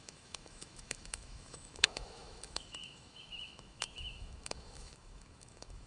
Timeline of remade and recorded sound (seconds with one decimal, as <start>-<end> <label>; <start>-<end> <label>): 0.0-5.9 remade